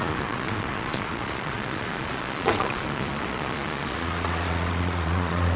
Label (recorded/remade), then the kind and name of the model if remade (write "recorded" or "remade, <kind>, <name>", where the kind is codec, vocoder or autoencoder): remade, vocoder, Vocos